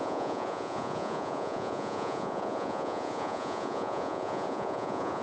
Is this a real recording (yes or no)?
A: no